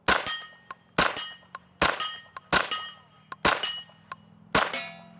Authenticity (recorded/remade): recorded